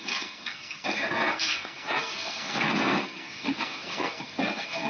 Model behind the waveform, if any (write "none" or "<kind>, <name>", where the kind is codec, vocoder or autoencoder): codec, SNAC